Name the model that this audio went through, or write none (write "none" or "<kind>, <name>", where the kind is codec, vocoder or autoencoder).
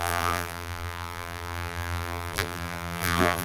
vocoder, BigVGAN v2